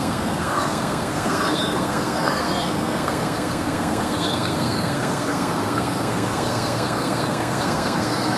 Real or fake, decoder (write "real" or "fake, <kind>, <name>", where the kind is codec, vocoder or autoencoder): fake, codec, SNAC